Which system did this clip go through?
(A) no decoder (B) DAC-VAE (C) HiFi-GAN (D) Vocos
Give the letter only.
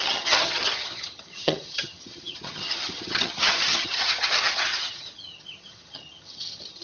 C